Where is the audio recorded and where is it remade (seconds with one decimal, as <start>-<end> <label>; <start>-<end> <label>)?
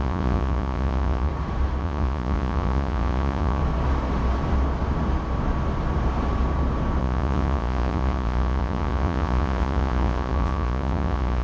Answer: 0.0-1.3 remade; 1.3-1.8 recorded; 1.8-3.6 remade; 3.6-7.0 recorded; 7.0-11.4 remade